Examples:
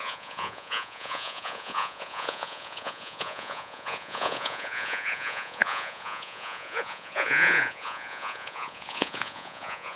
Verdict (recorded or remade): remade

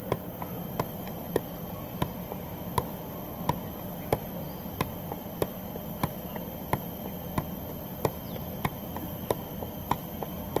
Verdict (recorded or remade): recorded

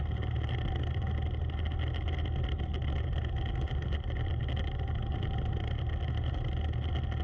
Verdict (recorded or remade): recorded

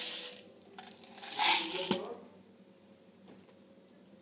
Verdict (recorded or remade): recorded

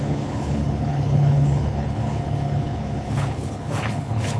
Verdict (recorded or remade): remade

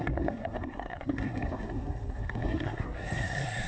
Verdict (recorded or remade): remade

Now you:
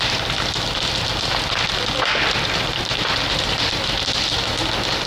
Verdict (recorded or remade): recorded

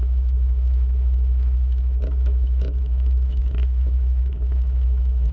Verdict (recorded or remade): remade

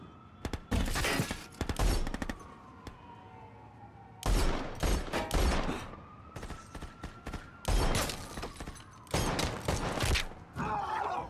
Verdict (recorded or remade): recorded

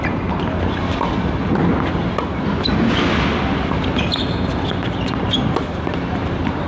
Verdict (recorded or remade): recorded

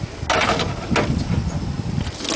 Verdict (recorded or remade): recorded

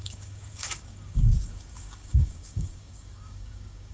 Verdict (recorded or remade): remade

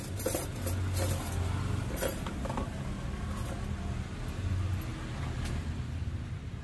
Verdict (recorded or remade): recorded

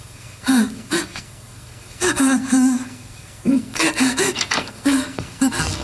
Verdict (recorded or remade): remade